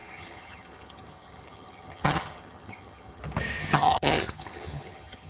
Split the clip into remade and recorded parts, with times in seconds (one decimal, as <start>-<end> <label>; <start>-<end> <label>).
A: 0.0-3.2 remade; 3.2-3.6 recorded; 3.6-5.3 remade